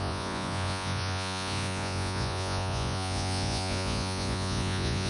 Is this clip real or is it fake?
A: fake